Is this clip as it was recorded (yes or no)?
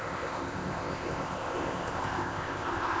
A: no